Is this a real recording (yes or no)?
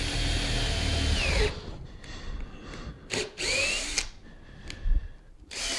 yes